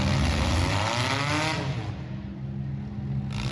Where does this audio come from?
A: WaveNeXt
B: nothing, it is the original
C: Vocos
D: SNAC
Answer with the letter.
B